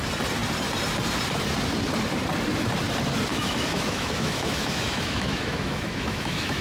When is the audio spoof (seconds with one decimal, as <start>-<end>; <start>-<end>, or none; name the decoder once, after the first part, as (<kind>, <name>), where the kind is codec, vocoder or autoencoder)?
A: 3.3-6.6 (autoencoder, DAC-VAE)